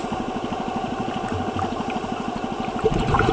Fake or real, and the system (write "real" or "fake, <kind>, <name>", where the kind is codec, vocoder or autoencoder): real